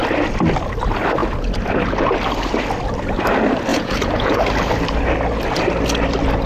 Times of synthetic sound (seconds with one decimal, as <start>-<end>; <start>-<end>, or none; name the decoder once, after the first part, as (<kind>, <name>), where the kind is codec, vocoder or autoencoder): 3.7-4.4 (vocoder, Vocos)

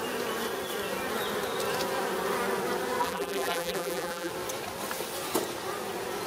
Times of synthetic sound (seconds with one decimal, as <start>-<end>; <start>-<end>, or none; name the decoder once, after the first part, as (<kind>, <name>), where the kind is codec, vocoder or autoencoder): 3.0-4.3 (vocoder, BigVGAN v2)

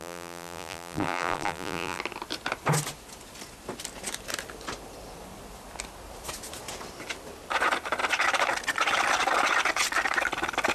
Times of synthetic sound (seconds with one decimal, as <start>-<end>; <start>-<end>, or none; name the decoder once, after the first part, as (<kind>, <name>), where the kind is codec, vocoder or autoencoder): 0.0-2.0 (vocoder, BigVGAN v2)

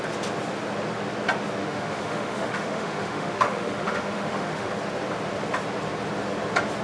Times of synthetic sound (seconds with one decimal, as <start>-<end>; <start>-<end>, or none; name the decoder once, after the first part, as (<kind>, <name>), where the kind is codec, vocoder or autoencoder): 1.6-4.7 (autoencoder, DAC-VAE)

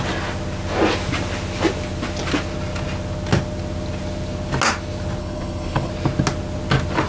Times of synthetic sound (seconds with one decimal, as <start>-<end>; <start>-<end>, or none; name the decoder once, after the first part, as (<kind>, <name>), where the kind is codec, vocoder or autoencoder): 5.2-5.9 (codec, HILCodec)

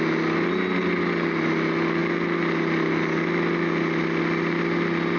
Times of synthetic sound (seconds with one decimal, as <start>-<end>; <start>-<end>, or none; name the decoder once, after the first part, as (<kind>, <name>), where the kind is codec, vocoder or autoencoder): none

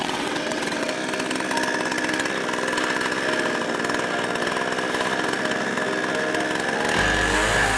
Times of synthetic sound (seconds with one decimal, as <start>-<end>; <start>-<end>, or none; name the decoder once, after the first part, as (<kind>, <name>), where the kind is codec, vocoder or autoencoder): 0.0-0.9 (vocoder, WaveNeXt)